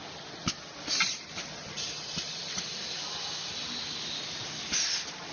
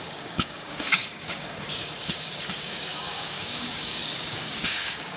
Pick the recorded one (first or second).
first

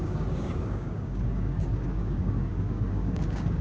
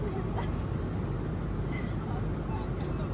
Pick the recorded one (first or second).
second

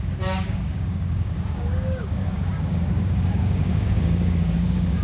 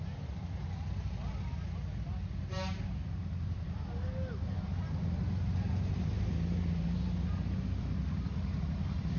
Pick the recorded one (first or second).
second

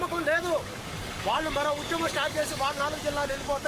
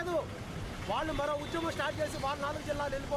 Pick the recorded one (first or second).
second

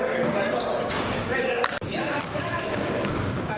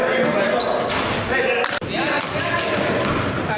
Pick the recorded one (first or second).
second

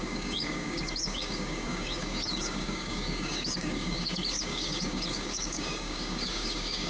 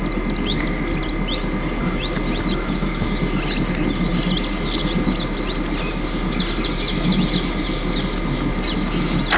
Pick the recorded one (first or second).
second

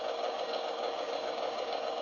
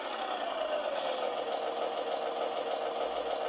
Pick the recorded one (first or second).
second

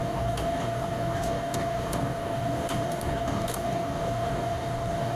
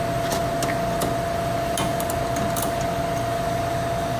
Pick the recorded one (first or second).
second